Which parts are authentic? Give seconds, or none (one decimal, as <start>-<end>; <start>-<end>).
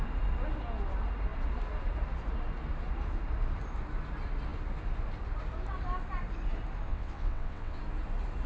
0.0-6.9; 7.8-8.5